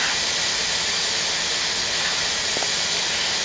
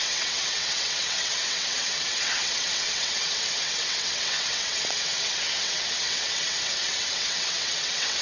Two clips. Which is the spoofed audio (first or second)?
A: second